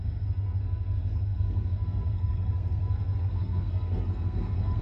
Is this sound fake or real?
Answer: fake